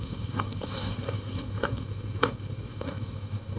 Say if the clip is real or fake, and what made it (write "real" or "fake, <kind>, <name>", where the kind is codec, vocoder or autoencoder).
fake, codec, SNAC